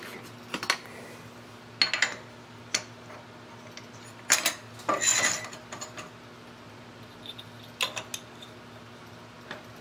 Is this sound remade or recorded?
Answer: recorded